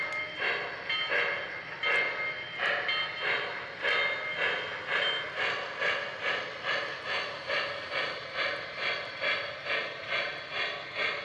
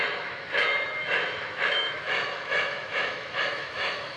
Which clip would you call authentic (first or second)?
first